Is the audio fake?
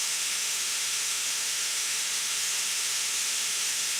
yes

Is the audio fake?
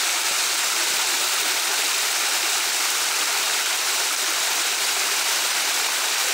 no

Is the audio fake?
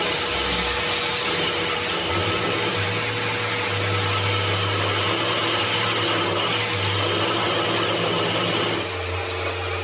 no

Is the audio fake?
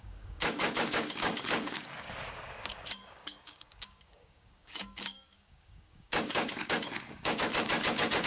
yes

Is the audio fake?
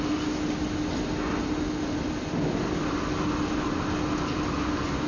no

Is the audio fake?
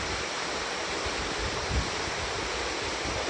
no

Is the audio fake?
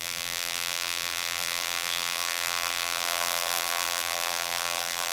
yes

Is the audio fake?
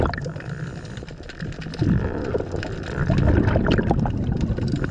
no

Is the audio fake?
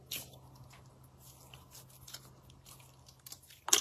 no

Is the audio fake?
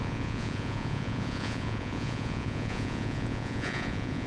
yes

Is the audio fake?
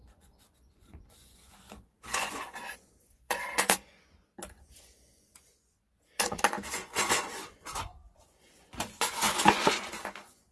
yes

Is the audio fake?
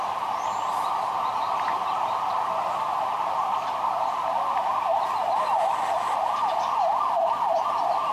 no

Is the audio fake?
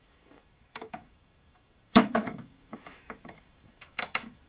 yes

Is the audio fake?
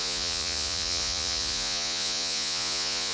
yes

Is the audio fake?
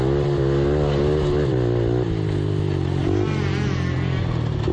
no